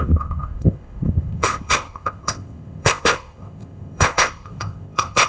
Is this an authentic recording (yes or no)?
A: no